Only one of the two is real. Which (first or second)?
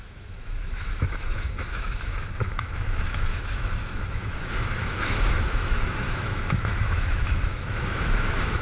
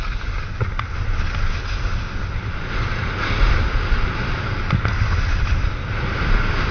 second